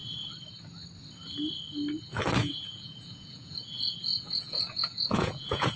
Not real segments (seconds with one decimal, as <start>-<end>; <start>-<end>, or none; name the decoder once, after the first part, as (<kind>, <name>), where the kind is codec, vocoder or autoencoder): 2.4-5.8 (vocoder, Vocos)